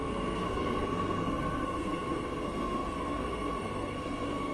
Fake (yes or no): yes